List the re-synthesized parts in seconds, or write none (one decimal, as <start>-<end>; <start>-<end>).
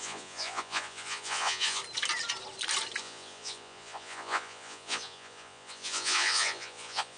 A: 0.0-1.8; 3.0-7.2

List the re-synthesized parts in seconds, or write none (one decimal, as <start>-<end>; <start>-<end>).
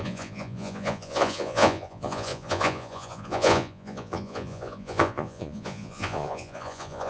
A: 0.0-7.1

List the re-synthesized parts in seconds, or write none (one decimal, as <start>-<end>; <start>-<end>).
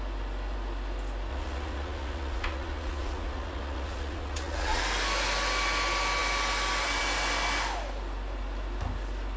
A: 1.3-4.8